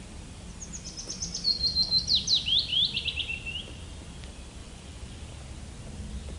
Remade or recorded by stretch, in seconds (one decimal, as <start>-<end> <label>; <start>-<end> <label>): 0.0-4.6 recorded; 4.6-5.2 remade; 5.2-6.4 recorded

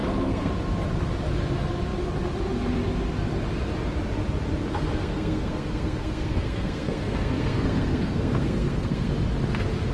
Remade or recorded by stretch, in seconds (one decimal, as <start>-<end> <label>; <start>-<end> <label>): 0.0-0.5 remade; 0.5-4.7 recorded; 4.7-9.1 remade; 9.1-9.9 recorded

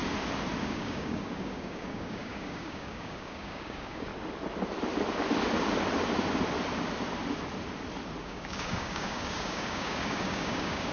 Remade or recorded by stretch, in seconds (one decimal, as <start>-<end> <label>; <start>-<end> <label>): 0.0-0.6 recorded; 0.6-4.1 remade; 4.1-8.2 recorded; 8.2-10.9 remade